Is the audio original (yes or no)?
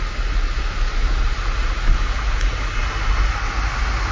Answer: yes